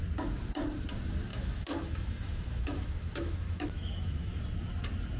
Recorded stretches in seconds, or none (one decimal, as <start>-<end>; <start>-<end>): 0.0-1.3; 4.4-5.2